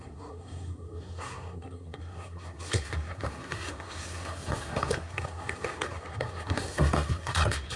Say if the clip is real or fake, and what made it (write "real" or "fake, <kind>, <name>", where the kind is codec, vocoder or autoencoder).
fake, codec, SNAC